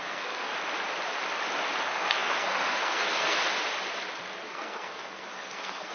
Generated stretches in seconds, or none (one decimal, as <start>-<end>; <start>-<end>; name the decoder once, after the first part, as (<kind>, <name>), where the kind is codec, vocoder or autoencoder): 0.0-0.5 (codec, SNAC); 1.8-3.4; 4.5-5.9